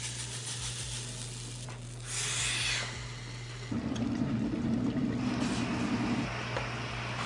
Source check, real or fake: real